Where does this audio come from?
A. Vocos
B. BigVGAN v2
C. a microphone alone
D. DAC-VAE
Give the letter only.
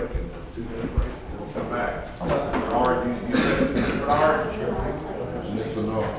C